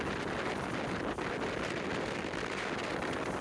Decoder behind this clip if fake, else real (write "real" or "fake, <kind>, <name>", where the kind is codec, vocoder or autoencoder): real